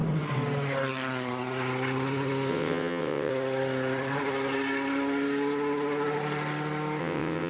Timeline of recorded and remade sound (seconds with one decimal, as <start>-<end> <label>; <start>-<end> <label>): 0.0-2.5 recorded; 2.5-3.3 remade; 3.3-7.0 recorded; 7.0-7.5 remade